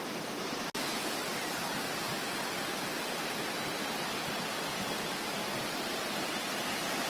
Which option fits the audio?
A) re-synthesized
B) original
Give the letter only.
B